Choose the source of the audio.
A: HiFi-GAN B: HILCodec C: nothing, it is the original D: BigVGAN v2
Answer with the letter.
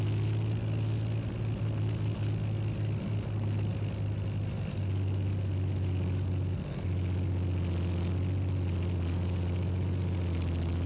C